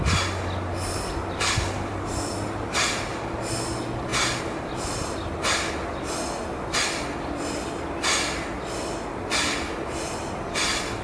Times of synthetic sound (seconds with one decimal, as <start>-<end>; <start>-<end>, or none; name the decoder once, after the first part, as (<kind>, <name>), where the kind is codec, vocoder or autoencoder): none